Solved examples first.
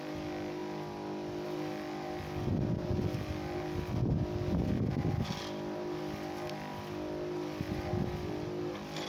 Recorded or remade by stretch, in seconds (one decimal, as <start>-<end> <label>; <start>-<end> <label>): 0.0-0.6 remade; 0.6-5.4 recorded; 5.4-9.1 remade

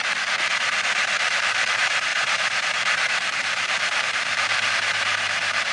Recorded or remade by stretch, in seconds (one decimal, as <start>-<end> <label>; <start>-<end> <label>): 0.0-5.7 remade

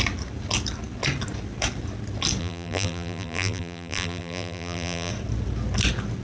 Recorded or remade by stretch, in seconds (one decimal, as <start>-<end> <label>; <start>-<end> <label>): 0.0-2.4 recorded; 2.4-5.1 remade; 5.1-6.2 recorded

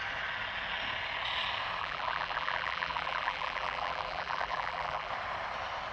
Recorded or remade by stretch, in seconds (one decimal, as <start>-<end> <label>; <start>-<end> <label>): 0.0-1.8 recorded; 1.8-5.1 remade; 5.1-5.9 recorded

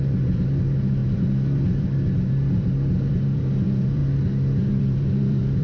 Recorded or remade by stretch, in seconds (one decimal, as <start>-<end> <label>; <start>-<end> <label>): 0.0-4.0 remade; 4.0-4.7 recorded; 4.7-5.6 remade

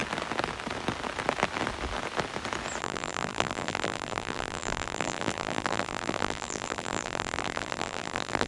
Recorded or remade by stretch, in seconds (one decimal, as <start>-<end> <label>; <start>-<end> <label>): 0.0-2.8 recorded; 2.8-8.5 remade